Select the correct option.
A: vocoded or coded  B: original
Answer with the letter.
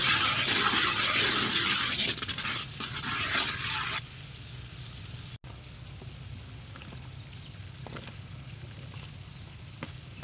B